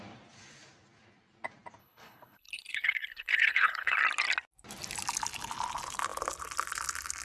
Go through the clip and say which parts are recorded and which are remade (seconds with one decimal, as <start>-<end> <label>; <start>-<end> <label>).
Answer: 0.0-1.8 recorded; 1.8-4.0 remade; 4.0-7.2 recorded